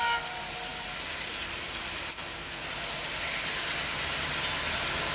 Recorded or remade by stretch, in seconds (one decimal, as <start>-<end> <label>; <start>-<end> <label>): 0.0-5.1 recorded